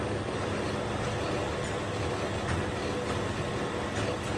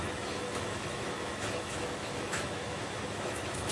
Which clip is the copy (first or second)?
second